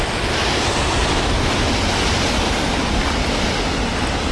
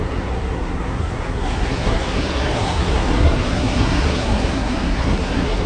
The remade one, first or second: second